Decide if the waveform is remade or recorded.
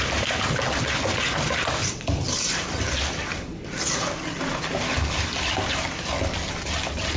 recorded